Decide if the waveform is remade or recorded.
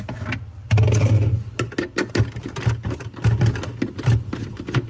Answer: recorded